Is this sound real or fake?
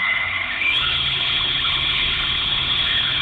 fake